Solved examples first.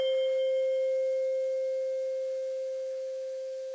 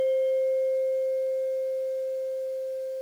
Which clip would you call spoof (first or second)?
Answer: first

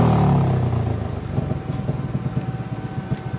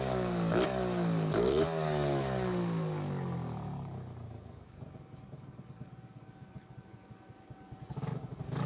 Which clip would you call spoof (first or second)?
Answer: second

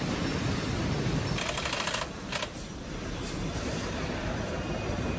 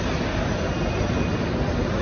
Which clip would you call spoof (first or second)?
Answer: first